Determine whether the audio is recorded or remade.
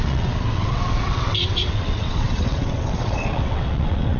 remade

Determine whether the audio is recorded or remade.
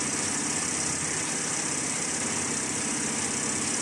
recorded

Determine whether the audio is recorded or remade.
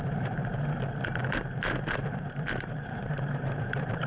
remade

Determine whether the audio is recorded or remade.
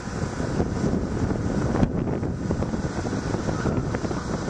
recorded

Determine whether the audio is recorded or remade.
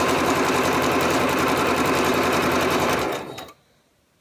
remade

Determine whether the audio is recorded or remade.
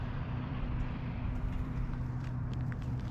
remade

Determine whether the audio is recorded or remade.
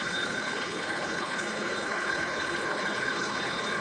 remade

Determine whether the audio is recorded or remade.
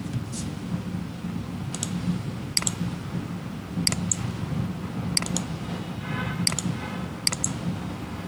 recorded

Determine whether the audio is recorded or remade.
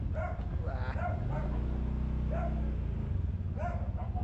recorded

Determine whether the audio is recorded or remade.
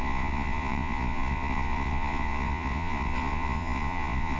remade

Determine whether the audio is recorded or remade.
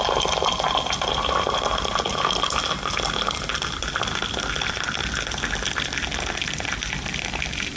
recorded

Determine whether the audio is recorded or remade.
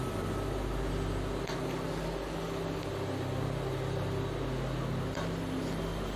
recorded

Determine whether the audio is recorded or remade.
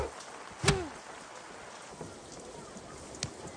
recorded